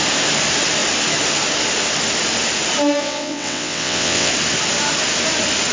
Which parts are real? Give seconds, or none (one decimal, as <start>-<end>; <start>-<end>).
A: 0.0-3.0; 4.3-5.7